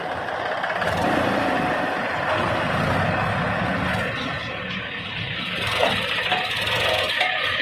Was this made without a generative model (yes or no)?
yes